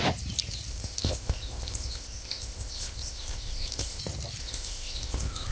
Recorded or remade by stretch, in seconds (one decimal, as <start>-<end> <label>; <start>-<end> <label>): 0.0-0.7 recorded; 0.7-4.0 remade; 4.0-4.4 recorded; 4.4-5.5 remade